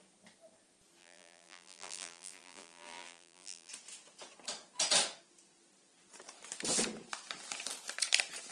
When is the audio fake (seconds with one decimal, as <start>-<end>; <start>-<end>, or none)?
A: 1.0-3.7